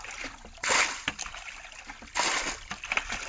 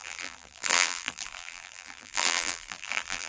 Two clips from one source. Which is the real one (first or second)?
first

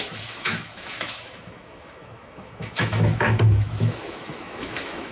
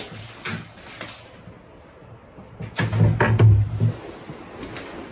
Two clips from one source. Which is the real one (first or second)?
second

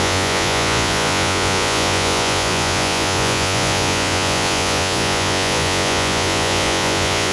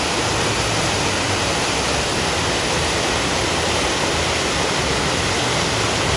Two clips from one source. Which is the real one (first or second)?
second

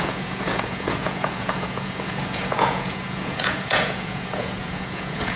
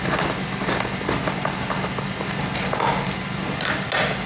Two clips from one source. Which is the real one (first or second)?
second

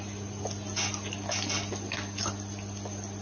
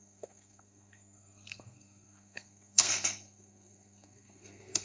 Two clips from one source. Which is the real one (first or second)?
first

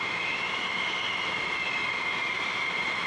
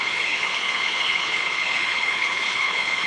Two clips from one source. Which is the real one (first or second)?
first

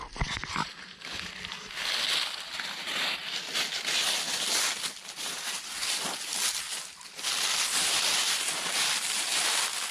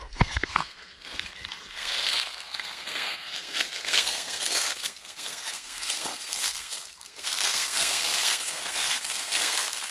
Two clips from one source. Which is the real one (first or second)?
first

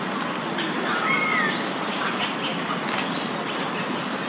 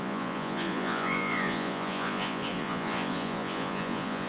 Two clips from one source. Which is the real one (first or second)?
first